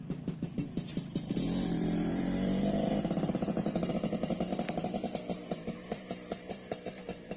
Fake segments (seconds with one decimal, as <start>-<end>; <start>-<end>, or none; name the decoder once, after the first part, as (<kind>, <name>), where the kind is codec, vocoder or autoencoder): 0.0-4.5 (vocoder, BigVGAN v2); 5.2-7.4